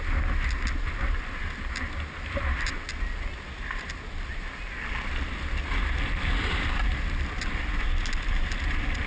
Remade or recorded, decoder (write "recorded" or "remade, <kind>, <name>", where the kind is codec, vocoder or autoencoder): recorded